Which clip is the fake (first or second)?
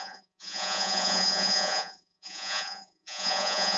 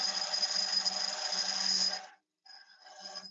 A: first